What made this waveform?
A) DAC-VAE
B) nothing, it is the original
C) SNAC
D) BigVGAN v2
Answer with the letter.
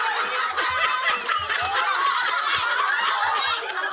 B